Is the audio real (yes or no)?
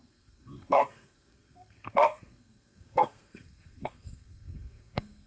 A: no